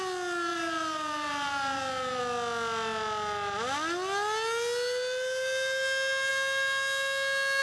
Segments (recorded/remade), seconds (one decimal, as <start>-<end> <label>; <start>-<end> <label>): 0.0-0.5 recorded; 0.5-2.2 remade; 2.2-7.6 recorded